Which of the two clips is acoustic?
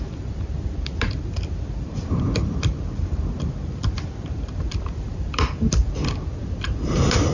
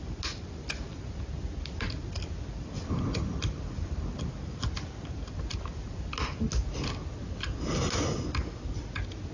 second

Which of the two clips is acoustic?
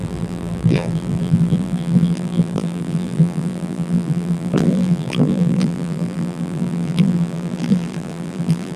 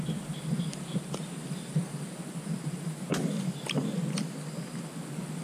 second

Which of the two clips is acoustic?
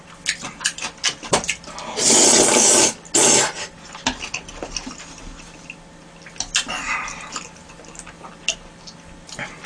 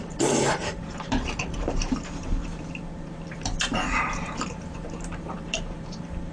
first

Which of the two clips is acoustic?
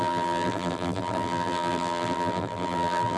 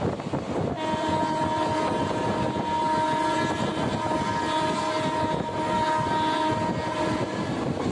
second